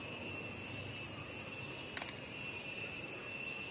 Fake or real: real